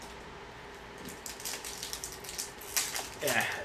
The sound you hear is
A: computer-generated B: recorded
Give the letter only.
B